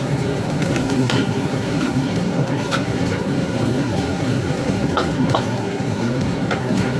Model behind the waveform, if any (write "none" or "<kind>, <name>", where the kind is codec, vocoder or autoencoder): codec, SNAC